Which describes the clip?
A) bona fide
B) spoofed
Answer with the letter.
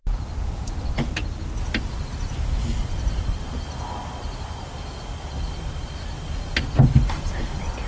A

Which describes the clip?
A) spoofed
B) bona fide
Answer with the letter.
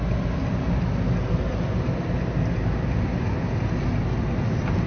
B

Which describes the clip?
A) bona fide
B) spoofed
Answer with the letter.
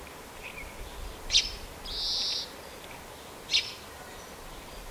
A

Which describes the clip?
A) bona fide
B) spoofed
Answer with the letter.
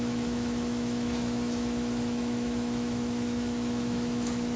B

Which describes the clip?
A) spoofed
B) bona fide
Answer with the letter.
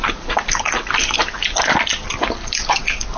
A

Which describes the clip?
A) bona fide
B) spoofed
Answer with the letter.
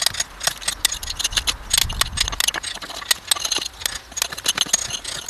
A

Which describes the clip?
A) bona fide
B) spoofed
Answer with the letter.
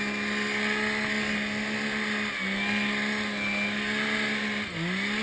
A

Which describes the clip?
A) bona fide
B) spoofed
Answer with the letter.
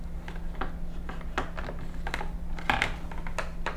A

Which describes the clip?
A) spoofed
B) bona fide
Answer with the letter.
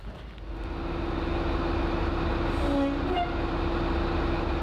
B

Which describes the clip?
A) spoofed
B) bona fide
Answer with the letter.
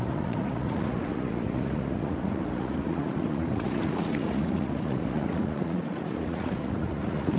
A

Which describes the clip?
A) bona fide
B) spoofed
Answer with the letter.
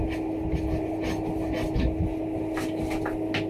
A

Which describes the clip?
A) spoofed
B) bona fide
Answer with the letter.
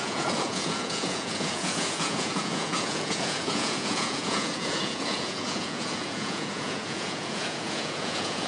A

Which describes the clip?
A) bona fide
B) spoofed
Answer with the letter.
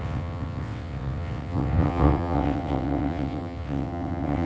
B